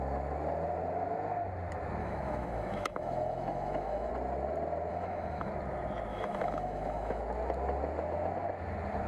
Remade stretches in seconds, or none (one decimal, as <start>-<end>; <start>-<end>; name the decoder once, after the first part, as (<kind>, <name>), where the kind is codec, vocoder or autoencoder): 2.0-4.1 (autoencoder, DAC-VAE); 4.9-5.5; 6.1-7.2